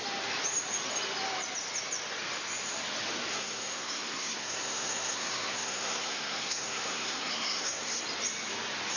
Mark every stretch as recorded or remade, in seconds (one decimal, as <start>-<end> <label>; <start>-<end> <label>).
0.0-3.3 recorded; 3.3-8.0 remade; 8.0-9.0 recorded